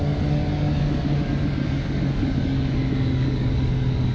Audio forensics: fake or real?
fake